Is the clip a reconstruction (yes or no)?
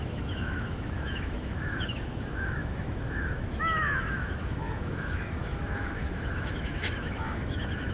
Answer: yes